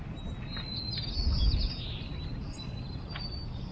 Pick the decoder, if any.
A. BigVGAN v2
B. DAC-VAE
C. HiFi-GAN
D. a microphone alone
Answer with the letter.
D